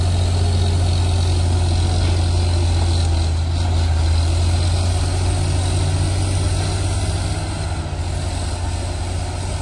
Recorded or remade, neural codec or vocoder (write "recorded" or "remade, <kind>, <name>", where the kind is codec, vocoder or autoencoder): recorded